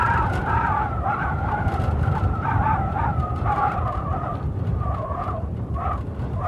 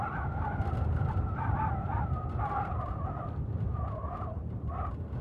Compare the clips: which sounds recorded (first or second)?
second